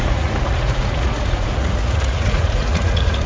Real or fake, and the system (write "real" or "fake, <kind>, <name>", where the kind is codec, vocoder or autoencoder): fake, vocoder, Vocos